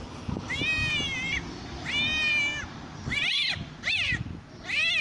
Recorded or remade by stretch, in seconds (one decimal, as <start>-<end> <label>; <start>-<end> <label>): 0.0-5.0 recorded